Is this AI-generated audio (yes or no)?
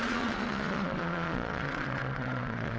yes